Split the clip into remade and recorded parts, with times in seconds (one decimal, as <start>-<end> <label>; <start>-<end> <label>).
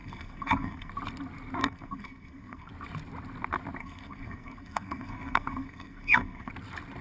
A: 0.0-0.9 remade; 0.9-1.6 recorded; 1.6-2.7 remade; 2.7-3.8 recorded; 3.8-6.5 remade; 6.5-7.0 recorded